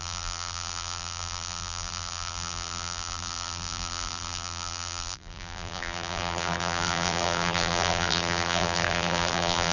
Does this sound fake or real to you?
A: fake